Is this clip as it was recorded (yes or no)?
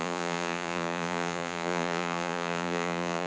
no